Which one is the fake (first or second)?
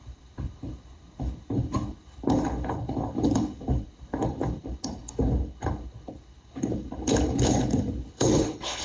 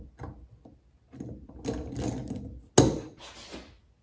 first